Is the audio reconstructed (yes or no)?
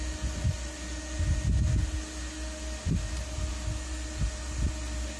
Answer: no